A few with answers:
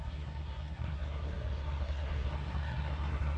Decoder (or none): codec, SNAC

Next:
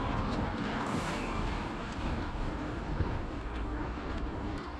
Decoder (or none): codec, DAC